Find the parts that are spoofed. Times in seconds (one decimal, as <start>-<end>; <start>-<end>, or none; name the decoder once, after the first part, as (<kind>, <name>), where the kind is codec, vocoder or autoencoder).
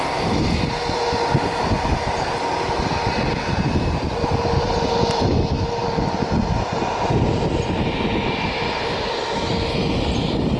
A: none